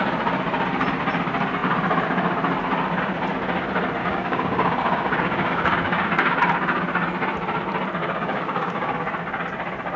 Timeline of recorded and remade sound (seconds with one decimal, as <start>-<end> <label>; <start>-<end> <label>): 0.0-4.0 recorded; 4.0-6.4 remade; 6.4-8.0 recorded; 8.0-9.0 remade; 9.0-10.0 recorded